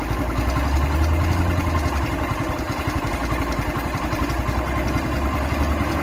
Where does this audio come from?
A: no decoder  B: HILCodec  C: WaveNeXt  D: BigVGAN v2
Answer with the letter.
A